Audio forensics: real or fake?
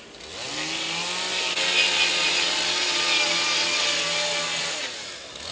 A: real